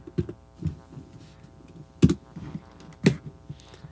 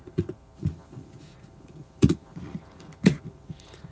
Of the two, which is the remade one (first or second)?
second